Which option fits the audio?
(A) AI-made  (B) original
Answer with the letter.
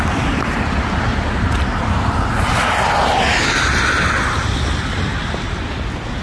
B